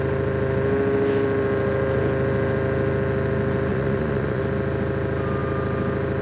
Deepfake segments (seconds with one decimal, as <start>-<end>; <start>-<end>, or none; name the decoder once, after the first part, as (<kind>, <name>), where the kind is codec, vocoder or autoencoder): 3.7-4.4 (vocoder, Vocos)